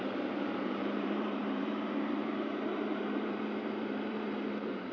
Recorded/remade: remade